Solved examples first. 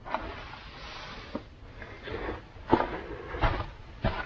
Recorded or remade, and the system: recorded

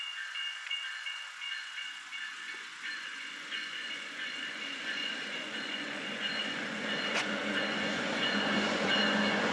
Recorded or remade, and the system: remade, vocoder, Vocos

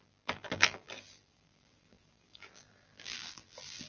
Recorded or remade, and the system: remade, vocoder, BigVGAN v2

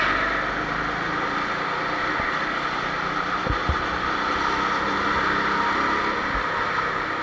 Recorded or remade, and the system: recorded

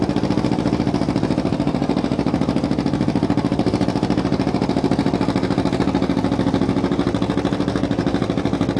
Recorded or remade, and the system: recorded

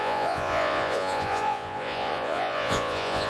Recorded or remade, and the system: remade, vocoder, Vocos